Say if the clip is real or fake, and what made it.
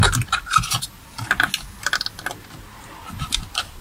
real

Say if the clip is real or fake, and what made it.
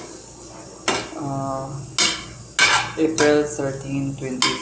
real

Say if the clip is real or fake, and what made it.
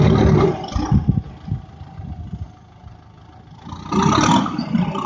real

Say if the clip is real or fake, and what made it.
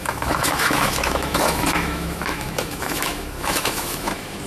fake, autoencoder, DAC-VAE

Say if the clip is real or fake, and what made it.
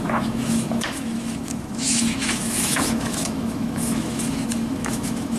fake, autoencoder, DAC-VAE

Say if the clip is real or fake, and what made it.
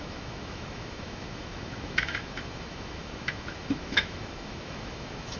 fake, autoencoder, DAC-VAE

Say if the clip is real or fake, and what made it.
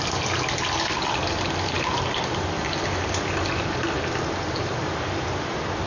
real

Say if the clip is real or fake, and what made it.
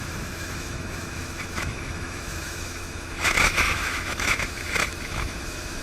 fake, autoencoder, DAC-VAE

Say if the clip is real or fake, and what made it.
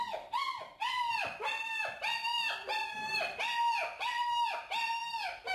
real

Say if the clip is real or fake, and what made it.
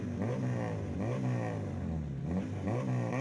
real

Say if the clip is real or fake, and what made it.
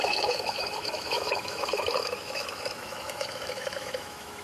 fake, autoencoder, DAC-VAE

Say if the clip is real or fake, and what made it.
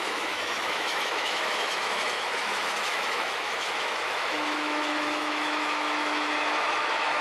fake, autoencoder, DAC-VAE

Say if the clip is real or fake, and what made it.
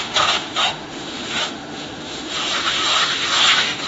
fake, autoencoder, DAC-VAE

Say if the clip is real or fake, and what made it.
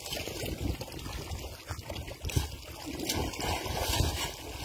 real